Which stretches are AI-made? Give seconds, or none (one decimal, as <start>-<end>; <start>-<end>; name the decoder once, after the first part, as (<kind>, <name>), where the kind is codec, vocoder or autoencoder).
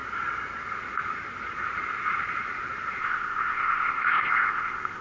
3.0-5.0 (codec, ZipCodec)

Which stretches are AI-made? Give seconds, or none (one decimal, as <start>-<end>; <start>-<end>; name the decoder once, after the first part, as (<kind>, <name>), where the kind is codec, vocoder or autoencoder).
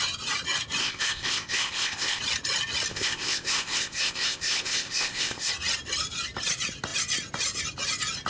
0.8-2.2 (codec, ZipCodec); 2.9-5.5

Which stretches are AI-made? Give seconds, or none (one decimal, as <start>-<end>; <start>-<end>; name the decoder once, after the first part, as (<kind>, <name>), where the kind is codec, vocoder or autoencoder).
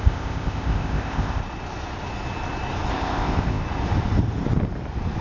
0.0-1.4 (codec, ZipCodec); 2.9-3.6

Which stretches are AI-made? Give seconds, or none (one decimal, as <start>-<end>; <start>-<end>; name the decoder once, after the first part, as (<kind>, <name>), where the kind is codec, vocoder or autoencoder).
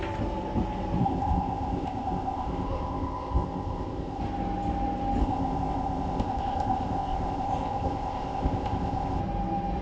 1.0-4.2 (codec, ZipCodec); 5.2-9.2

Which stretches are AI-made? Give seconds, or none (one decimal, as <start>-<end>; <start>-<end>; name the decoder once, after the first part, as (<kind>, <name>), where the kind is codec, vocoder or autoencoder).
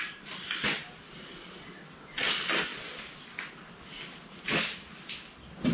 none